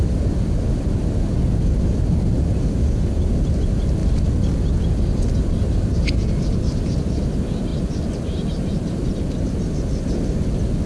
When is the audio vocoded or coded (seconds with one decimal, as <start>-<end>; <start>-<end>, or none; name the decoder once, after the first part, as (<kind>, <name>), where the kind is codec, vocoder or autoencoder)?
none